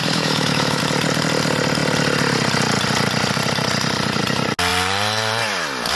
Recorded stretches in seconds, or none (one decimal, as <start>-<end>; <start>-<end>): 0.8-5.9